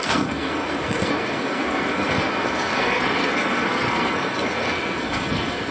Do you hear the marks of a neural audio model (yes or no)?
yes